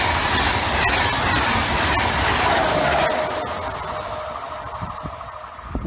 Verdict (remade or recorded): recorded